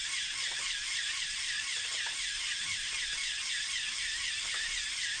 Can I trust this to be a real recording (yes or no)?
no